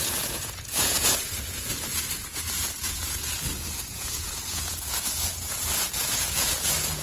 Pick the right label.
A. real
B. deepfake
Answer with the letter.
B